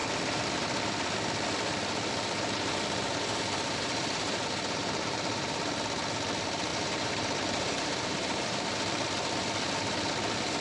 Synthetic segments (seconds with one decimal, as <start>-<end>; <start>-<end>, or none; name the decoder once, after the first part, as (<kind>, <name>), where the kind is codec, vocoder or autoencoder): 3.1-5.6 (vocoder, BigVGAN v2); 6.7-8.7